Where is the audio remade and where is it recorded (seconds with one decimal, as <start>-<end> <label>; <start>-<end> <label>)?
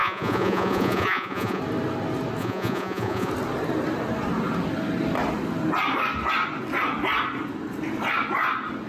0.0-1.6 remade; 1.6-2.4 recorded; 2.4-3.3 remade; 3.3-8.9 recorded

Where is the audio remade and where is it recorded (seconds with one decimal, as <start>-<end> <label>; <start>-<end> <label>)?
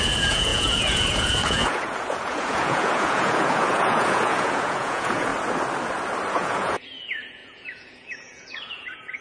0.0-5.3 remade; 5.3-6.3 recorded; 6.3-9.2 remade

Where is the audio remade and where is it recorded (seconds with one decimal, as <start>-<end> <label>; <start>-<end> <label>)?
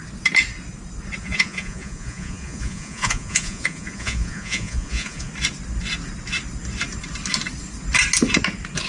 0.0-1.2 recorded; 1.2-5.3 remade; 5.3-8.9 recorded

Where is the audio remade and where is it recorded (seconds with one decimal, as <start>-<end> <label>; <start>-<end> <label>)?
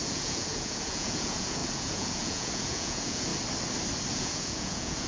0.0-3.3 remade; 3.3-4.1 recorded; 4.1-5.1 remade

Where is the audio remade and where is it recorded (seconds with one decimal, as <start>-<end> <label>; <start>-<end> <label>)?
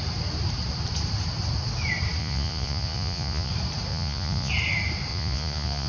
0.0-2.2 recorded; 2.2-3.5 remade; 3.5-3.9 recorded; 3.9-4.5 remade; 4.5-5.1 recorded; 5.1-5.9 remade